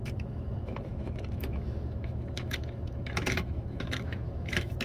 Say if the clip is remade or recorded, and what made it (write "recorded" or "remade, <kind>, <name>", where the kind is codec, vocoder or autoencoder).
remade, autoencoder, DAC-VAE